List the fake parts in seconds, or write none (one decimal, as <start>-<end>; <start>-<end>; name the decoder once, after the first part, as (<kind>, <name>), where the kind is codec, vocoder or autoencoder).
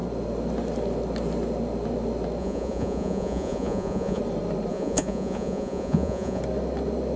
2.4-4.2 (vocoder, Vocos); 4.7-6.4